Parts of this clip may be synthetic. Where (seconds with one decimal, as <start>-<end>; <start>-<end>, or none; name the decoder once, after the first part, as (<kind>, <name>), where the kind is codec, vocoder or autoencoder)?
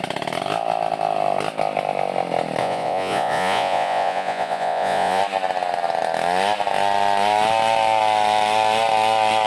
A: 2.6-5.2 (vocoder, Vocos)